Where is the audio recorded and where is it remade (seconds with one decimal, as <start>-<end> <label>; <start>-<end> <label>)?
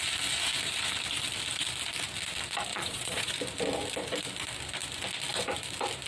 0.0-2.7 recorded; 2.7-3.3 remade; 3.3-6.1 recorded